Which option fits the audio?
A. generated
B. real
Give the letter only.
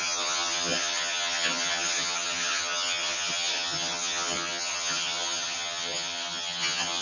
A